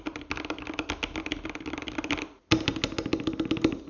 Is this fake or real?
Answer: real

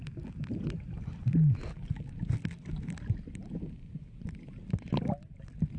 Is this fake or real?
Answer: real